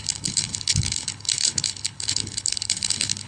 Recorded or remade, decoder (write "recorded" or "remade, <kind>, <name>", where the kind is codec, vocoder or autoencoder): remade, codec, HILCodec